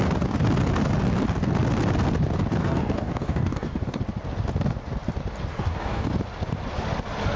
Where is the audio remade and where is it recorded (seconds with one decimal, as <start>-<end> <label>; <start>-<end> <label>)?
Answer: 0.0-2.6 recorded; 2.6-4.0 remade; 4.0-5.5 recorded; 5.5-6.1 remade; 6.1-7.4 recorded